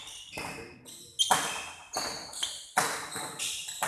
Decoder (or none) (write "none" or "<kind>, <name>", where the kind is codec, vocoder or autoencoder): none